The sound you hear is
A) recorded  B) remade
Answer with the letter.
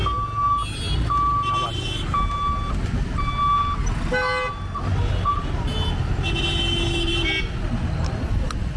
A